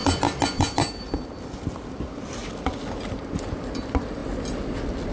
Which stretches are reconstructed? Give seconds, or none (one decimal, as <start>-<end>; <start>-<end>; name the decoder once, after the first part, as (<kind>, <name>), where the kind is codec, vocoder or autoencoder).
1.6-2.4 (vocoder, BigVGAN v2); 3.1-4.2